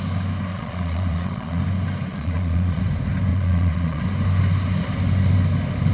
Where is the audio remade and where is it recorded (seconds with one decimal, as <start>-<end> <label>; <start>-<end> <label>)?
0.0-0.5 recorded; 0.5-1.6 remade; 1.6-2.1 recorded; 2.1-2.8 remade; 2.8-3.3 recorded; 3.3-4.0 remade; 4.0-5.9 recorded